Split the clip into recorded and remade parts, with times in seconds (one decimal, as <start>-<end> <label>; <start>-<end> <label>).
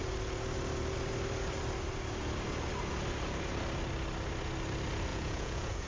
0.0-5.1 recorded; 5.1-5.9 remade